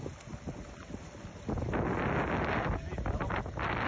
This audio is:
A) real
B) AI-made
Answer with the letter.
A